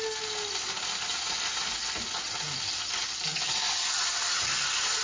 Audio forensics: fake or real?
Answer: real